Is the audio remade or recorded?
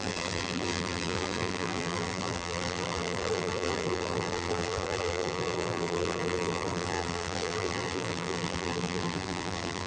remade